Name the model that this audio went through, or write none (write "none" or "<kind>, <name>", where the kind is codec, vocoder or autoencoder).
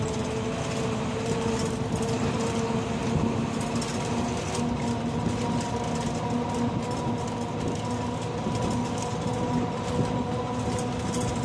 none